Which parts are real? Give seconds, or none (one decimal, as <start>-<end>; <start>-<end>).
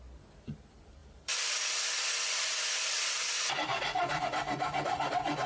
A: 0.0-1.0; 4.2-5.5